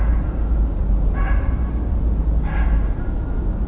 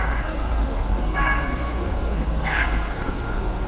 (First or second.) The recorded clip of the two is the first